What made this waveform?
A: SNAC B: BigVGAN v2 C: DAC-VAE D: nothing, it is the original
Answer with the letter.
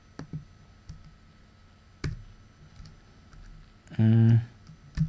D